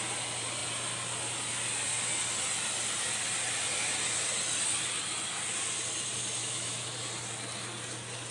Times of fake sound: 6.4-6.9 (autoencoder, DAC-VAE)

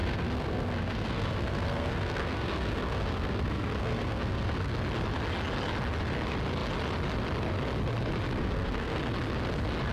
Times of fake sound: 0.0-4.8 (codec, SNAC); 8.4-9.0

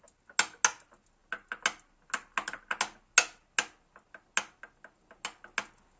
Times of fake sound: none

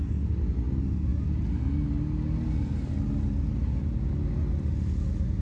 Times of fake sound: none